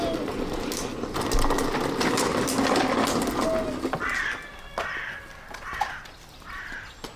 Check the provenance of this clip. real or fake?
real